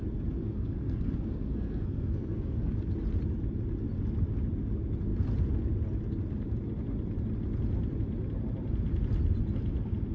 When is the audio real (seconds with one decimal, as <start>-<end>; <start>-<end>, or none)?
0.0-0.4; 2.7-10.1